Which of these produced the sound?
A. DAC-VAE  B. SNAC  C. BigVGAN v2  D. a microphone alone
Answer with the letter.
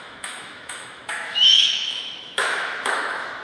A